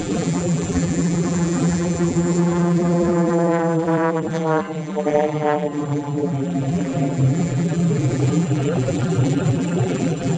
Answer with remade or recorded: remade